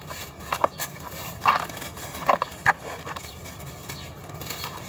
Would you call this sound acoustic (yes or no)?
yes